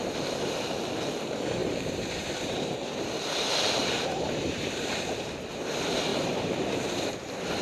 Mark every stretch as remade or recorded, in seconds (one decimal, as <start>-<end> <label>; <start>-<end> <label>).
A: 0.0-1.6 recorded; 1.6-3.2 remade; 3.2-3.8 recorded; 3.8-4.9 remade; 4.9-6.1 recorded; 6.1-7.1 remade; 7.1-7.6 recorded